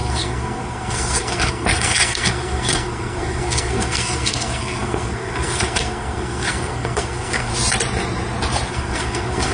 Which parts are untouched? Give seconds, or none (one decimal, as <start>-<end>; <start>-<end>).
7.5-8.7